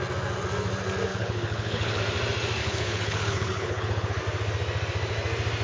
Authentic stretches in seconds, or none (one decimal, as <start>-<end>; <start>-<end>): 0.0-1.1; 2.0-2.6; 4.2-5.6